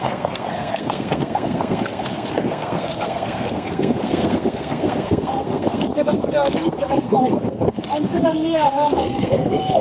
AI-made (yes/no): yes